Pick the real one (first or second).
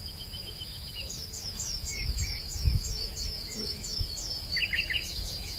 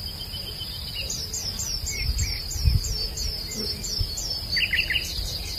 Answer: second